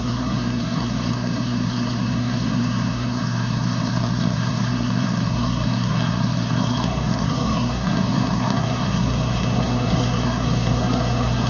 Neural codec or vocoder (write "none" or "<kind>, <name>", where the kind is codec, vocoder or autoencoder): codec, SNAC